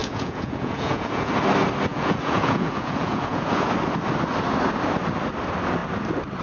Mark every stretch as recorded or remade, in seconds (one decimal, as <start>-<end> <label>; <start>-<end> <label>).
0.0-1.3 remade; 1.3-1.9 recorded; 1.9-3.7 remade; 3.7-6.4 recorded